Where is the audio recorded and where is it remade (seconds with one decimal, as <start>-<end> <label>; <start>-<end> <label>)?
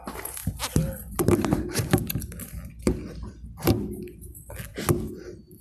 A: 0.0-0.4 recorded; 0.4-2.7 remade; 2.7-5.6 recorded